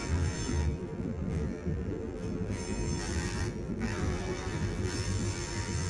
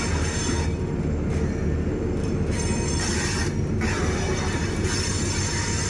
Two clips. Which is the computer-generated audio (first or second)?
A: first